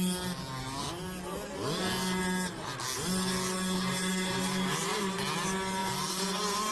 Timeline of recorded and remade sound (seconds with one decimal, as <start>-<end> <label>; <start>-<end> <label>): 0.0-6.7 recorded